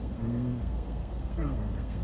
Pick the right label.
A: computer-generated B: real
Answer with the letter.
A